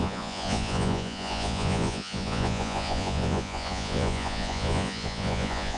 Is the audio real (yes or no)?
no